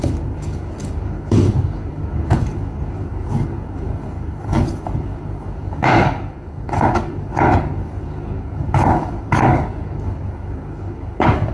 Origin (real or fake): fake